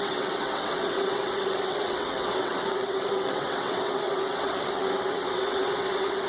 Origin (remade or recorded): remade